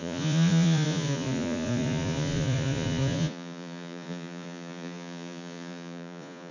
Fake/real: fake